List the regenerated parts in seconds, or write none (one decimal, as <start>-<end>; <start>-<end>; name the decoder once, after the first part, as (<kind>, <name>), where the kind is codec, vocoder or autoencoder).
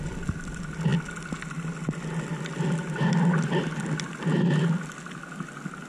none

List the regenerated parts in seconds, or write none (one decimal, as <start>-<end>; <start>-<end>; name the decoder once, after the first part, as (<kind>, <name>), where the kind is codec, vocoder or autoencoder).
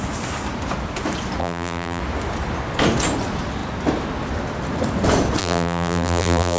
1.4-2.0 (vocoder, BigVGAN v2); 5.4-6.6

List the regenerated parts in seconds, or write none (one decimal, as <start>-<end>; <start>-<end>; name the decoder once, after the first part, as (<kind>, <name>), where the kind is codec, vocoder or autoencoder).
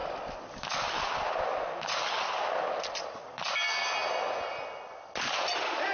none